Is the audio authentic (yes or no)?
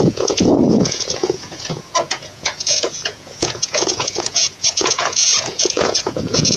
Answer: no